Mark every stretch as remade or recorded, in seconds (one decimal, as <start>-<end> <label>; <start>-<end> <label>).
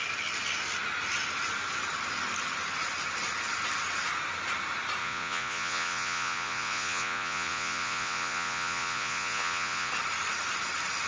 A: 0.0-5.0 recorded; 5.0-9.9 remade; 9.9-11.1 recorded